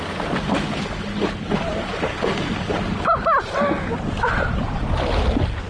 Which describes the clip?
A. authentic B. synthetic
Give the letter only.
A